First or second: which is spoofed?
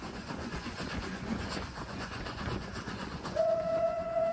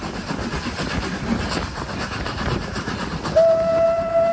first